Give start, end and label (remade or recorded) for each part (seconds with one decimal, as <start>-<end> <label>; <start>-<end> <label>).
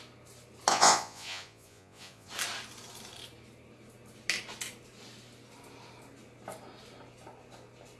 0.0-0.7 recorded; 0.7-2.3 remade; 2.3-8.0 recorded